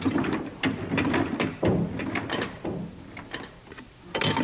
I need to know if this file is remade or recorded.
recorded